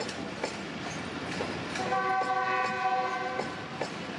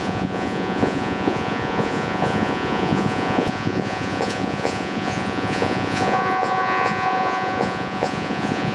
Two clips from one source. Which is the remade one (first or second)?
second